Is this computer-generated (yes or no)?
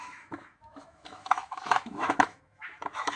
yes